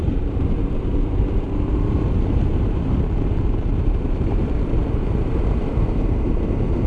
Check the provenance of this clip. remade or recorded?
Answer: remade